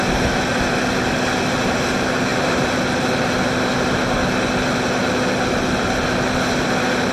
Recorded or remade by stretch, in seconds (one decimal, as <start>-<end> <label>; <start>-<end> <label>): 0.0-7.1 recorded